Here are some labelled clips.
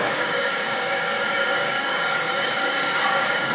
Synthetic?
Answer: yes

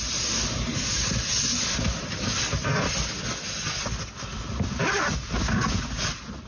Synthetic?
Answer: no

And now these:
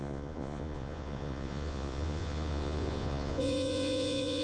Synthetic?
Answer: yes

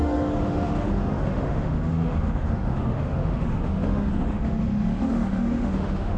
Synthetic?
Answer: yes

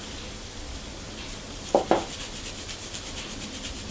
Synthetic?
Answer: no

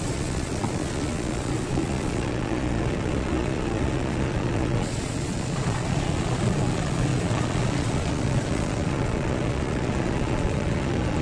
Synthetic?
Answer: yes